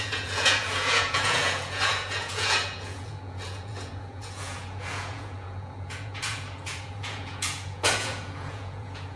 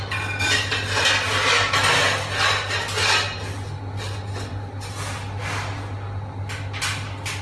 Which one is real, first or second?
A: second